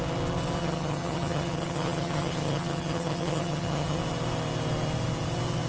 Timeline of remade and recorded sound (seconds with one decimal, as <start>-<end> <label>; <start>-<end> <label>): 0.0-0.6 recorded; 0.6-4.0 remade; 4.0-5.7 recorded